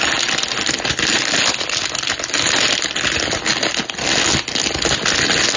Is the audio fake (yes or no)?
no